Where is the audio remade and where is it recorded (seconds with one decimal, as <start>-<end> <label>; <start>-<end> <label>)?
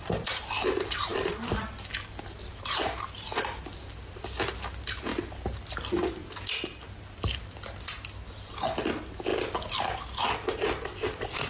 0.0-1.1 recorded; 1.1-1.6 remade; 1.6-11.5 recorded